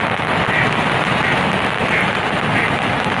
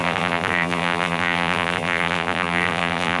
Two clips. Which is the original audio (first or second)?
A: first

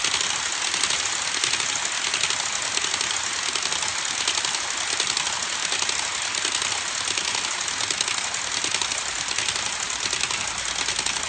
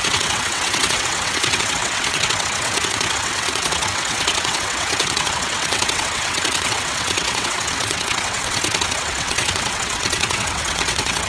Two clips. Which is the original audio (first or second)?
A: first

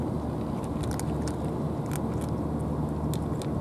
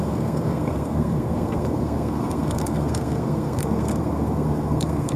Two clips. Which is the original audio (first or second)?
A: first